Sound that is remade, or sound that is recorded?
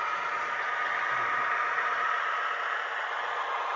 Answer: recorded